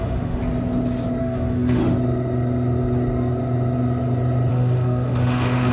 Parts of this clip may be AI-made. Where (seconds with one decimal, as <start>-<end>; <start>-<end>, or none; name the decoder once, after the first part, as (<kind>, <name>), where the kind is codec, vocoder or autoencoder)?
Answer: 0.0-0.4 (autoencoder, DAC-VAE); 1.2-1.8; 4.5-5.7